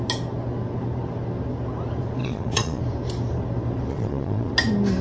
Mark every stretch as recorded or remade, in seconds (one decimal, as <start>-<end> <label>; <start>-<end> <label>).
0.0-2.2 recorded; 2.2-2.8 remade; 2.8-3.9 recorded; 3.9-4.5 remade; 4.5-5.0 recorded

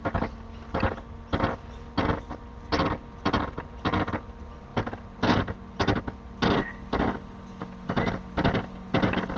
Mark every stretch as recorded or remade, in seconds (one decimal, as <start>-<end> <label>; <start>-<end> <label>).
0.0-9.4 recorded

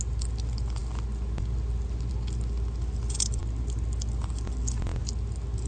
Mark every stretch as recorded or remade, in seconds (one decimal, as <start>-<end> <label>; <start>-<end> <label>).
0.0-5.7 recorded

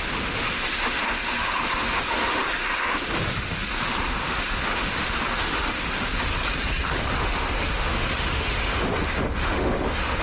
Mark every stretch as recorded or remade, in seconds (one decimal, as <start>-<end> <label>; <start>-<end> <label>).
0.0-6.3 remade; 6.3-7.0 recorded; 7.0-10.2 remade

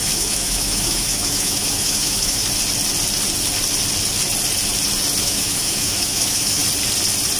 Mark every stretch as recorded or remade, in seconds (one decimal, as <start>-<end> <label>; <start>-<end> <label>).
0.0-2.4 remade; 2.4-5.2 recorded; 5.2-6.6 remade; 6.6-7.4 recorded

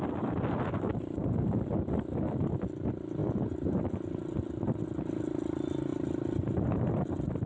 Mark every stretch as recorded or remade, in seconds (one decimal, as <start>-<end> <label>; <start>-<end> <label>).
0.0-7.5 recorded

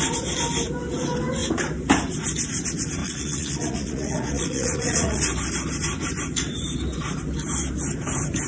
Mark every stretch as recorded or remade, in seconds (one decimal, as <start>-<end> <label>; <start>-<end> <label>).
0.0-3.0 recorded; 3.0-5.2 remade; 5.2-8.5 recorded